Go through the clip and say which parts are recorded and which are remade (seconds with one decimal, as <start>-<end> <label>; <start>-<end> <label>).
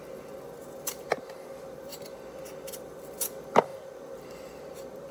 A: 0.0-5.1 recorded